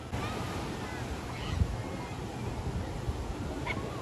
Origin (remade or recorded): recorded